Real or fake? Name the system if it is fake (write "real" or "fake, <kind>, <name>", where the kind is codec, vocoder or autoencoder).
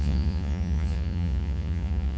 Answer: fake, vocoder, Vocos